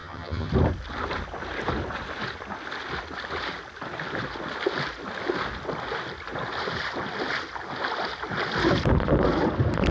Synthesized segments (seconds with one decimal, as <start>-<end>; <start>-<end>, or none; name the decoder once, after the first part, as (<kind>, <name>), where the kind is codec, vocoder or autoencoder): 0.0-0.5 (vocoder, HiFi-GAN)